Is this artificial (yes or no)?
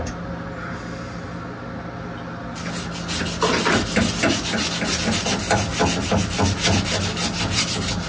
no